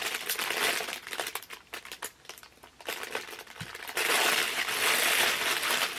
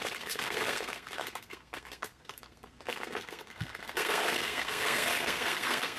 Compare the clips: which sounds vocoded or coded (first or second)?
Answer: second